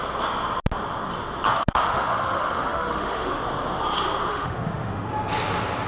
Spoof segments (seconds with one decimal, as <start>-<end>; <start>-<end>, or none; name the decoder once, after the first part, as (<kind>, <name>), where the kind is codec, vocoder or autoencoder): 1.6-3.4 (autoencoder, DAC-VAE); 4.3-5.1